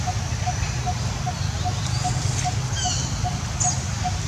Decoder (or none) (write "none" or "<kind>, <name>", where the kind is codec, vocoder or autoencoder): none